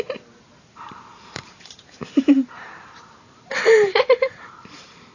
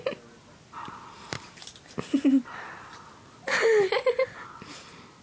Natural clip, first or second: second